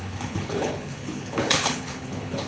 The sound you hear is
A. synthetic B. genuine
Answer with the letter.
A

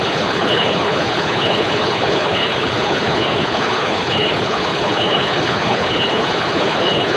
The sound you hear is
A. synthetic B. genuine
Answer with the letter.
A